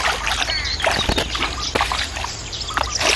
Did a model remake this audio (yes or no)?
no